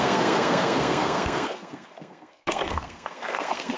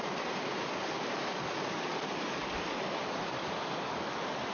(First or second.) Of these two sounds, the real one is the second